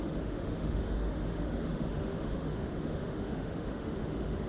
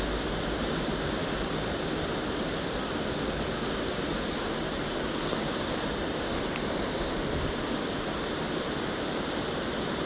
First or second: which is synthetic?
first